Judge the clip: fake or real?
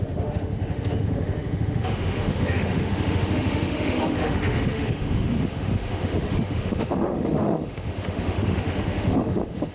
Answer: fake